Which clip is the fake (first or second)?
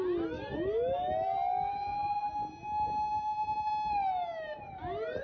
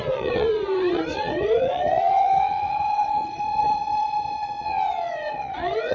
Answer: second